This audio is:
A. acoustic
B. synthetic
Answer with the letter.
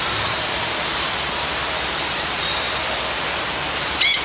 A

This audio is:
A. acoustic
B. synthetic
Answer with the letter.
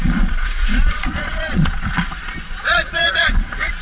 B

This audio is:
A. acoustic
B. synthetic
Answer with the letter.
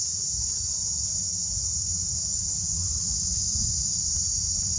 B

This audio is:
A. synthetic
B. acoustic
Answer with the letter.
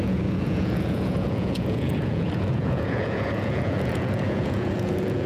A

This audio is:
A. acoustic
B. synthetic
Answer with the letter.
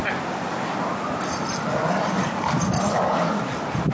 A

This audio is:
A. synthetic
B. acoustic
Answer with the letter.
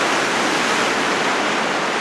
B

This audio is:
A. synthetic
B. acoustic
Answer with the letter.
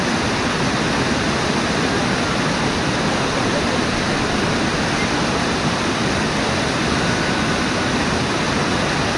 B